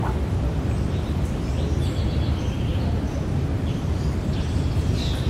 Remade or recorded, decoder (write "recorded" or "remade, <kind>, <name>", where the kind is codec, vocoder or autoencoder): recorded